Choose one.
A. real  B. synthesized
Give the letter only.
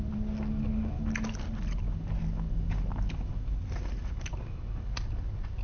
A